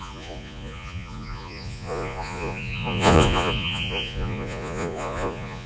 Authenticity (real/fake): fake